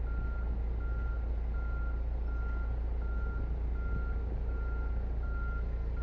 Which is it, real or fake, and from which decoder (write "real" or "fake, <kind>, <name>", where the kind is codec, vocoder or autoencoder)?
real